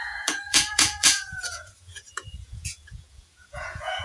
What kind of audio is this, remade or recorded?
remade